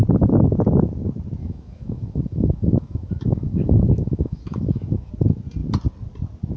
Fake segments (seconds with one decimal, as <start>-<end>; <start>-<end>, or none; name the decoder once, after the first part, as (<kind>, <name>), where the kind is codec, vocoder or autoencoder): 1.4-5.1 (autoencoder, DAC-VAE)

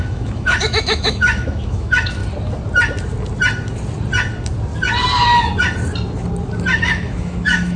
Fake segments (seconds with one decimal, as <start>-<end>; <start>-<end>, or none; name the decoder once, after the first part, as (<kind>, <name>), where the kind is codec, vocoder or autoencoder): 0.0-2.2 (autoencoder, DAC-VAE); 6.8-7.8

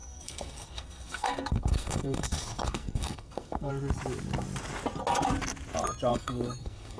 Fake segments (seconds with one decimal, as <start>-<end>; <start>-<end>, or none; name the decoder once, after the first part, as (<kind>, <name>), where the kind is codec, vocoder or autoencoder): 0.0-3.7 (codec, SNAC); 6.1-7.0

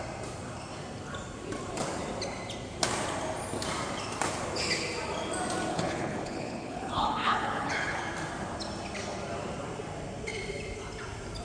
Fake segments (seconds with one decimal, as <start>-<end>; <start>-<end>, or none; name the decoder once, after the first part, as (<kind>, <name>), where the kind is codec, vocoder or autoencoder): 5.7-8.0 (codec, HILCodec)

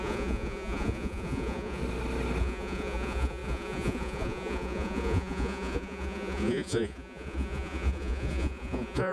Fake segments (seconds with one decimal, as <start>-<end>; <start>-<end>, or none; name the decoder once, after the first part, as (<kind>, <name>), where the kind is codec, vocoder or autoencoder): 0.0-1.8 (vocoder, Vocos); 2.4-9.1

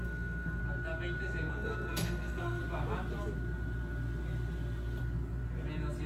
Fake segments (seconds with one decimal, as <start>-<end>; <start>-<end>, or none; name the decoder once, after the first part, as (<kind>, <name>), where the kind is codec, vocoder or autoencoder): 0.0-0.6 (codec, SNAC); 1.5-2.6

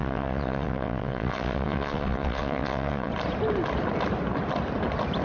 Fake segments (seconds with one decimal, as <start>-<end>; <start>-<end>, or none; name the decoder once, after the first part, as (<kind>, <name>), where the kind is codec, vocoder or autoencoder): 0.0-3.1 (vocoder, WaveNeXt)